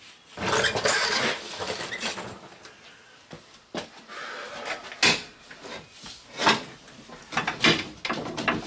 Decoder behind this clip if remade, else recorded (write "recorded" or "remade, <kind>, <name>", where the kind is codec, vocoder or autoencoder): recorded